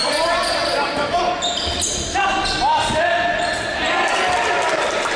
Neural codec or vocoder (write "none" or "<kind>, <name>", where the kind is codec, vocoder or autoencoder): none